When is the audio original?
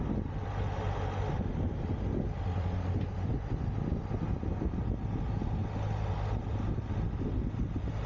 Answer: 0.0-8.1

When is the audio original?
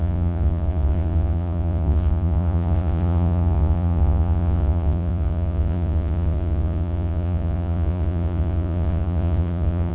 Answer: none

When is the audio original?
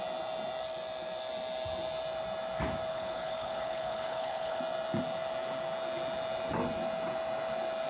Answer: 0.0-2.9; 4.6-7.9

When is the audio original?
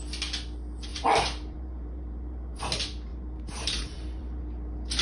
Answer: 0.0-0.9; 2.6-3.1; 4.4-5.0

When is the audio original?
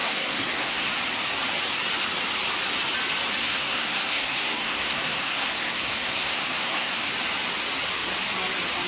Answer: 0.9-3.4; 7.1-8.9